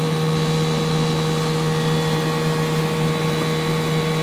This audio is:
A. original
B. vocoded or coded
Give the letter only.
A